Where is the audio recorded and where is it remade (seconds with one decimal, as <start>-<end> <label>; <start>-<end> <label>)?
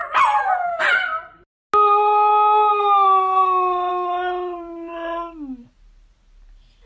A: 0.0-6.9 recorded